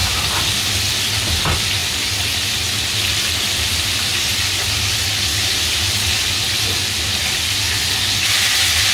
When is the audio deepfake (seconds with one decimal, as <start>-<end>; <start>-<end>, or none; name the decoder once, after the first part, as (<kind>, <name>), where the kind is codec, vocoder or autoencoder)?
none